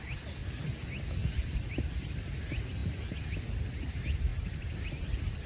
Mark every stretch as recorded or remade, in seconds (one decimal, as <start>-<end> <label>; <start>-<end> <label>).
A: 0.0-5.5 recorded